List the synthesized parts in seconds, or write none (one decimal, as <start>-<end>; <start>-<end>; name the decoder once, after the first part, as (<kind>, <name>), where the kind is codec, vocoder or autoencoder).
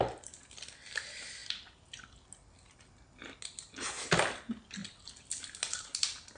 none